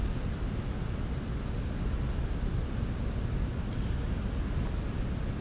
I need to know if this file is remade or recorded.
recorded